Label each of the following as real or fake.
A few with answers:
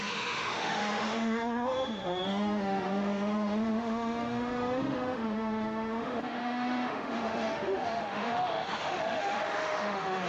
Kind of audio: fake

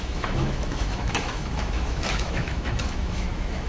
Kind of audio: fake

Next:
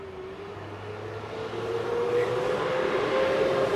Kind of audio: real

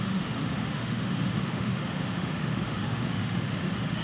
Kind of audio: fake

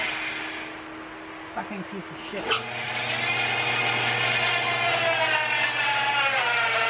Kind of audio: real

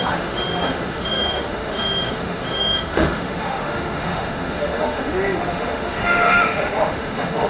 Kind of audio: fake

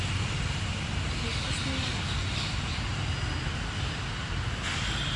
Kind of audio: real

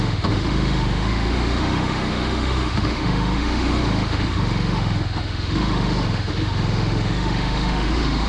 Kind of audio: fake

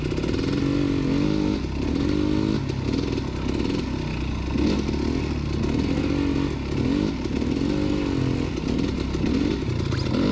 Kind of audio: real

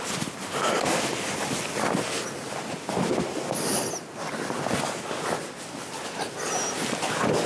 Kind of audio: real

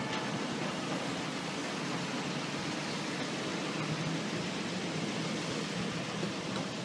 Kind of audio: real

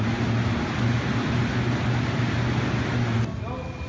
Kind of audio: real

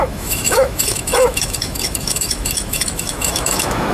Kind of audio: fake